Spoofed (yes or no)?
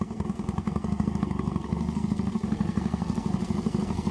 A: yes